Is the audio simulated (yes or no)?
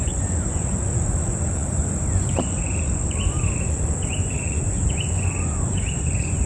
yes